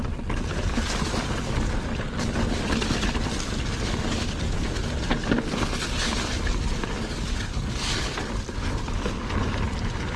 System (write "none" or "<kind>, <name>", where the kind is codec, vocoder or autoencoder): none